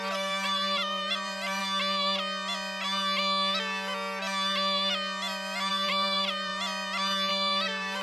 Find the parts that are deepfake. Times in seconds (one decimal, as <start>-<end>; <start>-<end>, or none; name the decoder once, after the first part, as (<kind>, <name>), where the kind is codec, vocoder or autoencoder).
0.0-1.6 (vocoder, BigVGAN v2); 5.7-6.5; 7.3-8.0